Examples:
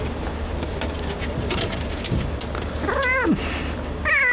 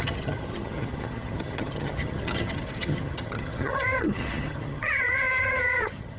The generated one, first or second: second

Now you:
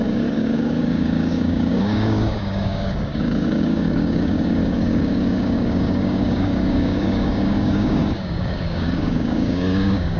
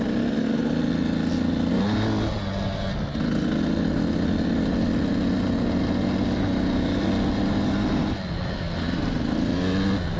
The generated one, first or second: first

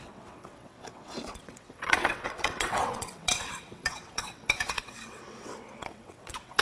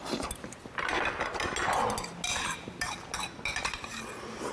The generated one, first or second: first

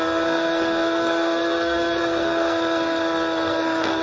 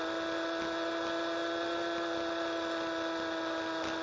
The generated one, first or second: first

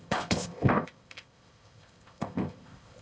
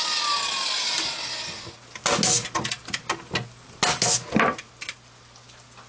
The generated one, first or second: first